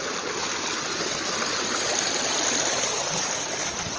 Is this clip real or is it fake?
real